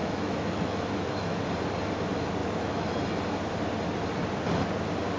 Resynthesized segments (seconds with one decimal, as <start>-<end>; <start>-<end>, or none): 0.0-1.4; 2.4-2.9